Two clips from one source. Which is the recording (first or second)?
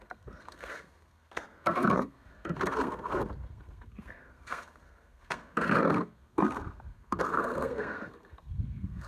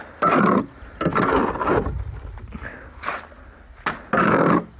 second